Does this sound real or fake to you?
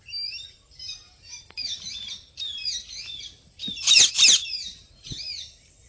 fake